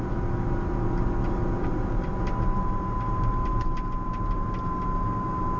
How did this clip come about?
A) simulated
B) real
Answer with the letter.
B